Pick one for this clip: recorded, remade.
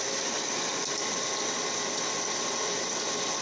recorded